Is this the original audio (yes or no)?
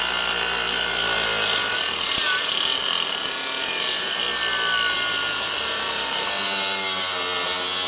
yes